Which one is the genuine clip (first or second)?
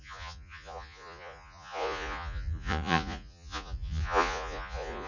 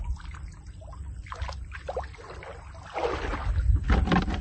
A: second